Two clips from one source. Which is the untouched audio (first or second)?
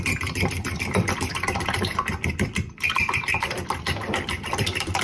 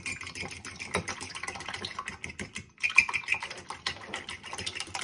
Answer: second